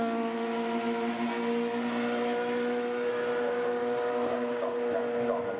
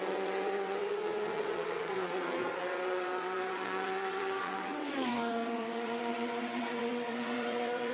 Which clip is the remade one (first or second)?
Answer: second